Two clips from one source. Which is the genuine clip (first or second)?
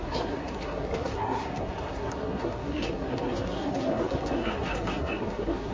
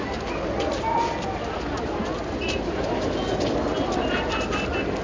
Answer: second